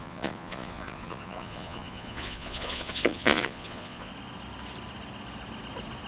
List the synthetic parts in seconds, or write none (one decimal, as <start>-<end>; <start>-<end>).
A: 0.0-4.1